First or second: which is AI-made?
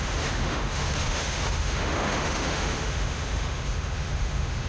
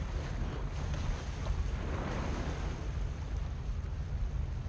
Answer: first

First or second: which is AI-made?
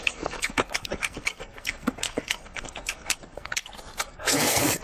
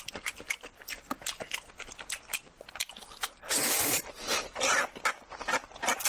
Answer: first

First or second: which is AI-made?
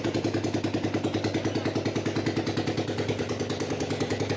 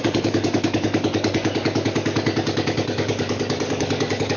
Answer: second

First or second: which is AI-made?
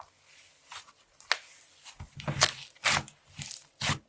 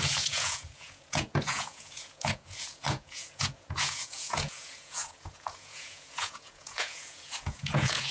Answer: second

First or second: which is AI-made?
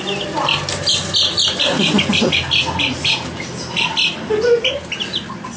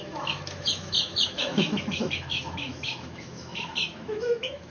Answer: second